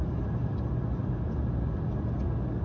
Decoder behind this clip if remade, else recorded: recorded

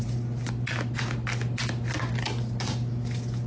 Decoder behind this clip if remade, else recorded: recorded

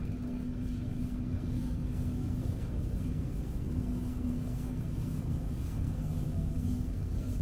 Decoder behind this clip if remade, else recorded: remade, codec, SNAC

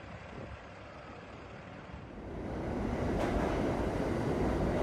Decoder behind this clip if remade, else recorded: remade, vocoder, BigVGAN v2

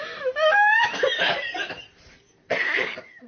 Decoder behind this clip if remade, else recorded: remade, vocoder, BigVGAN v2